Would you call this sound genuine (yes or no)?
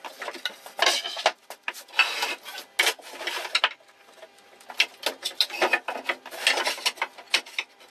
yes